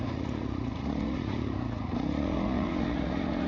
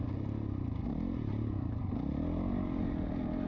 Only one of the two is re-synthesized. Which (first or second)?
first